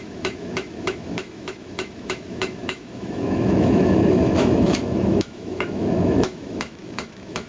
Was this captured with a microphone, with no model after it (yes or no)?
no